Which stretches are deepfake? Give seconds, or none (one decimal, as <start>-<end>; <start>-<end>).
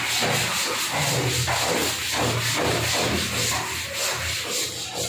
none